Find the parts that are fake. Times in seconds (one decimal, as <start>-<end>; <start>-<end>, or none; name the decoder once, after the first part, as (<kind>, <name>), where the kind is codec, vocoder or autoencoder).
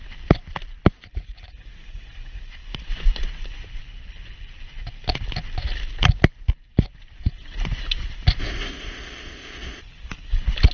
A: 8.4-9.8 (codec, ZipCodec)